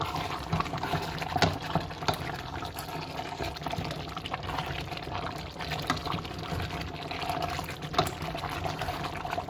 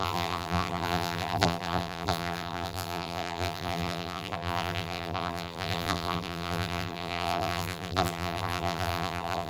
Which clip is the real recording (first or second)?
first